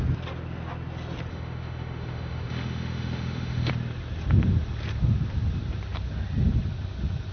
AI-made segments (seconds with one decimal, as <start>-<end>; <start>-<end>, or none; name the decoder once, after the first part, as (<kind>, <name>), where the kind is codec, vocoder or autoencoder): 1.3-3.7 (autoencoder, DAC-VAE)